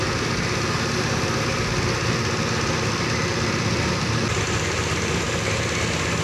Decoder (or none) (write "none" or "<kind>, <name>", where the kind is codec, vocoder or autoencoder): none